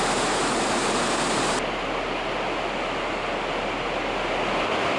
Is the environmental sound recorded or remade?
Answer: recorded